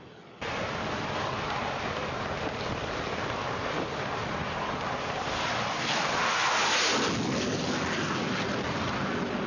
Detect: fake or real real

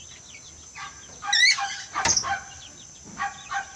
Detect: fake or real real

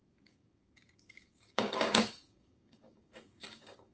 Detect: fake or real fake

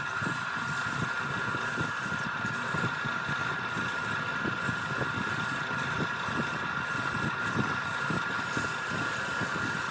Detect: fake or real real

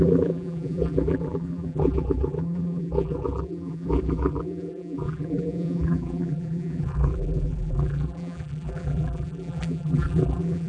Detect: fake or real fake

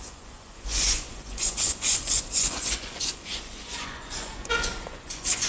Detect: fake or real fake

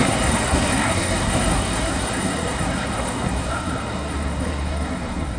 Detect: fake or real fake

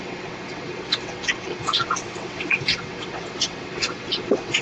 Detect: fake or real fake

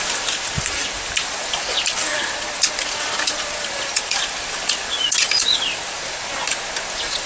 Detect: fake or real real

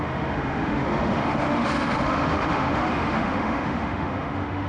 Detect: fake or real fake